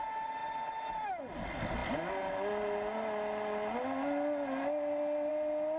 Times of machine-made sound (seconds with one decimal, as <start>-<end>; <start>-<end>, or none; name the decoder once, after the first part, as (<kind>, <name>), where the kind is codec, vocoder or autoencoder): none